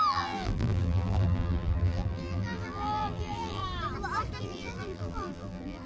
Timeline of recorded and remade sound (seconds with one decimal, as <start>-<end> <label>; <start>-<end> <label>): 0.0-3.6 remade; 3.6-4.4 recorded; 4.4-5.9 remade